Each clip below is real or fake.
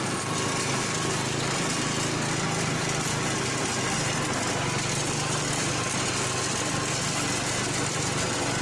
fake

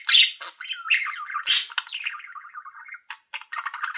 real